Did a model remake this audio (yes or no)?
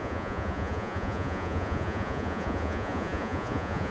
yes